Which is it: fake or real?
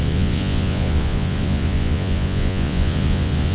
fake